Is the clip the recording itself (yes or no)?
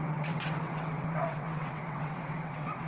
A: no